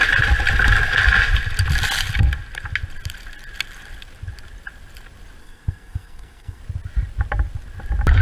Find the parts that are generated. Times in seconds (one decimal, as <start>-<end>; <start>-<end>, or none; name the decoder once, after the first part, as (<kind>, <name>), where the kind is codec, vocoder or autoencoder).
5.4-6.6 (codec, SNAC)